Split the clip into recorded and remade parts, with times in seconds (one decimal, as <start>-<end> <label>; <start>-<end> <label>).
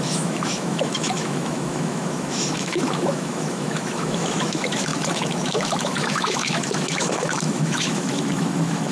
0.0-8.9 remade